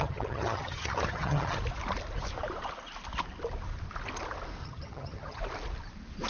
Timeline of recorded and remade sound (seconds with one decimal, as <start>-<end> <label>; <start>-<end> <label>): 0.0-1.6 remade; 1.6-4.6 recorded; 4.6-5.4 remade; 5.4-6.3 recorded

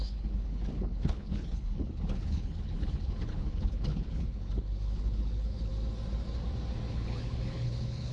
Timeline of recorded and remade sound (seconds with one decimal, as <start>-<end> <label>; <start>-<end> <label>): 0.0-5.7 remade; 5.7-6.9 recorded; 6.9-8.1 remade

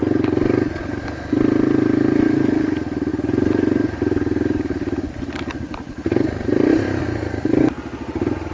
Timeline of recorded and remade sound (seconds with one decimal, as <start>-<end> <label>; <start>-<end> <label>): 0.0-3.1 recorded; 3.1-7.0 remade; 7.0-8.5 recorded